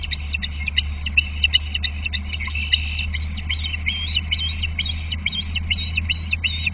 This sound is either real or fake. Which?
real